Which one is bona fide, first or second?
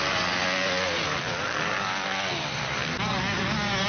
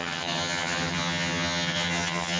first